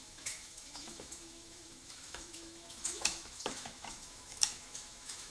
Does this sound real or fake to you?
fake